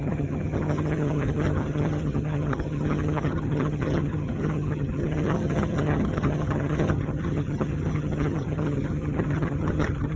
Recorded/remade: remade